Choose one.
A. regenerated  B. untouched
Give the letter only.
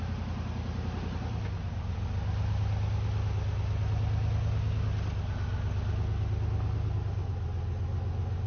B